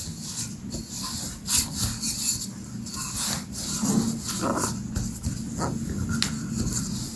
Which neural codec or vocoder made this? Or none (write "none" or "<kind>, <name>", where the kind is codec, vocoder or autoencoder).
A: none